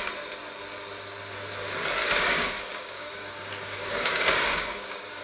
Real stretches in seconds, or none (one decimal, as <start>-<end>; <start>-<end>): 0.0-2.0